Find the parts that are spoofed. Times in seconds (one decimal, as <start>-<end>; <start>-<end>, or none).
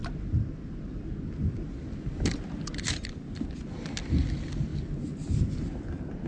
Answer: none